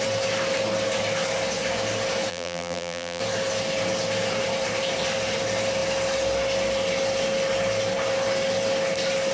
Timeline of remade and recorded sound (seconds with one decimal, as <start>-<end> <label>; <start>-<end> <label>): 0.0-2.3 recorded; 2.3-3.2 remade; 3.2-9.3 recorded